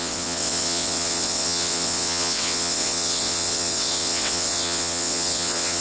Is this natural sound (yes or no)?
no